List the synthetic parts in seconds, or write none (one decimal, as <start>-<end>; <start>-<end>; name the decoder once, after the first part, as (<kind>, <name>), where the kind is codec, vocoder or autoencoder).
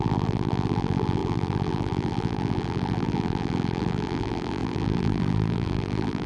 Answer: 0.0-6.3 (vocoder, BigVGAN v2)